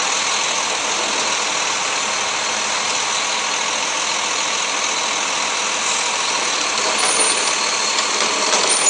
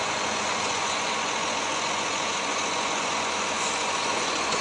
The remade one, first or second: second